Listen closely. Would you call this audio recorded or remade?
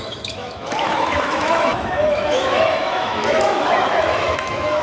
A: remade